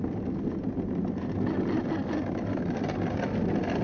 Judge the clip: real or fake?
real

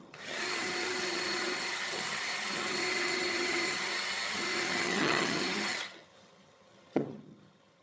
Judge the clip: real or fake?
fake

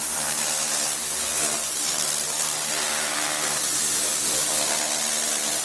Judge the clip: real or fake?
real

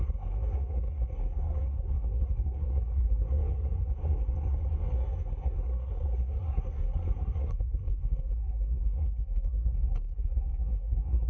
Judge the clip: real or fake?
fake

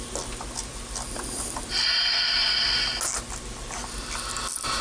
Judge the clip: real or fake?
real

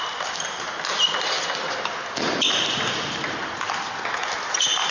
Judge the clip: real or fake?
real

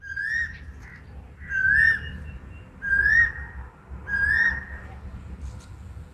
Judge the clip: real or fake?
real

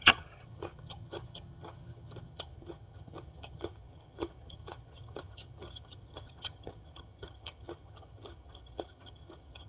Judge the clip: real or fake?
fake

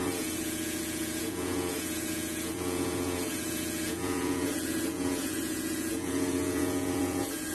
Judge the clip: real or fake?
fake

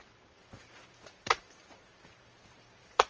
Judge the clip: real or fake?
fake